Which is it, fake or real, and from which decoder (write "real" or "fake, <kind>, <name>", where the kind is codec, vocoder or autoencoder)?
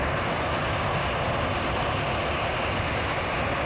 real